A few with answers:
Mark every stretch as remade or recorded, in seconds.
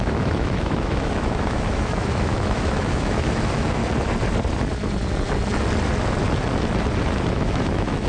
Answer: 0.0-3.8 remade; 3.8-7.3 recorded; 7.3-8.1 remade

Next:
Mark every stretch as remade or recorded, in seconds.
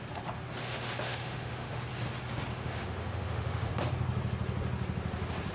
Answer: 0.0-0.6 recorded; 0.6-1.8 remade; 1.8-2.5 recorded; 2.5-3.7 remade; 3.7-5.5 recorded